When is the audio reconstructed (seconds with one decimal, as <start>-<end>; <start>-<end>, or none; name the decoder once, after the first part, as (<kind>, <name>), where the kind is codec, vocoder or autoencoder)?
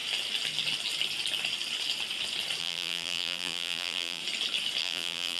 2.6-4.2 (vocoder, BigVGAN v2); 4.8-5.4